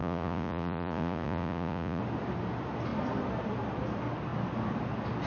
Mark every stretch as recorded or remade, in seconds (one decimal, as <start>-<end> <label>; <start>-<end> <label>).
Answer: 0.0-2.0 remade; 2.0-5.3 recorded